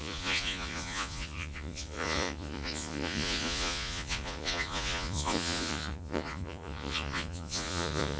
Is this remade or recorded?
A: remade